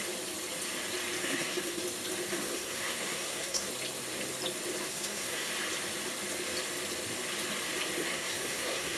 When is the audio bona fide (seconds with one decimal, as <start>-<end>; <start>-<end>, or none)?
0.0-1.2; 1.8-2.3; 3.7-4.9; 5.5-8.0